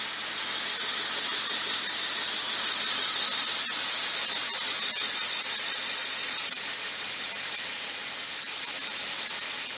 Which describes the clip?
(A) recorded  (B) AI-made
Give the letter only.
A